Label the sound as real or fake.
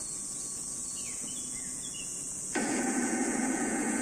fake